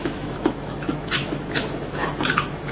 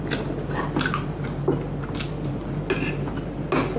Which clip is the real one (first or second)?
second